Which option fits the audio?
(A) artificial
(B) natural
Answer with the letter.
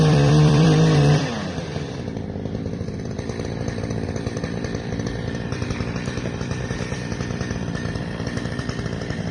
A